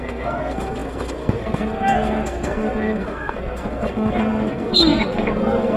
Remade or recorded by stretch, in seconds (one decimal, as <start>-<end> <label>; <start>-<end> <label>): 0.0-5.8 remade